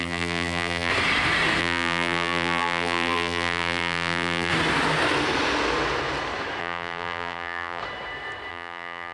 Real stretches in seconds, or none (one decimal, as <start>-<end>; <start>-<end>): 0.9-1.6; 4.5-6.6; 7.8-8.5